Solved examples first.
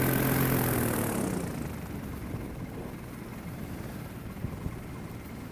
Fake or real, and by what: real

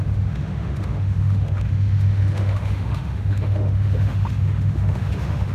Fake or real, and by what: fake, autoencoder, DAC-VAE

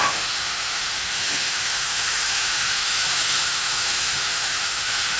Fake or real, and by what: fake, autoencoder, DAC-VAE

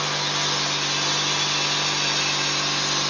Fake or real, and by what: real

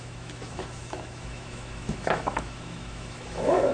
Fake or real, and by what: fake, autoencoder, DAC-VAE